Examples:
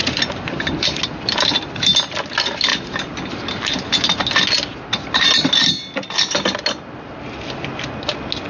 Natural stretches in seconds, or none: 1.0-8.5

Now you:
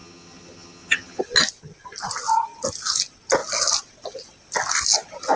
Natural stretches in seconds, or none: 1.2-5.4

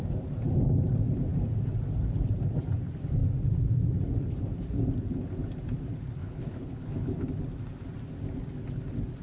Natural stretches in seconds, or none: 0.0-6.2; 7.4-9.2

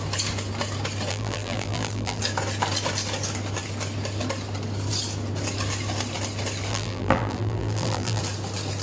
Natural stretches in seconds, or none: 0.0-1.1; 2.2-6.7; 8.2-8.8

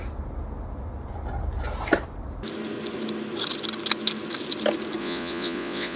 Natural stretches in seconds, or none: 0.0-5.0

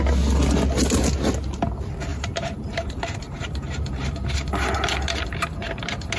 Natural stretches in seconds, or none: 0.0-2.1; 5.8-6.2